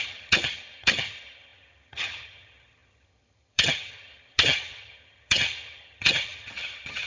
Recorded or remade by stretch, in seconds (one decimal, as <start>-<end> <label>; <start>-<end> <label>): 0.0-7.1 remade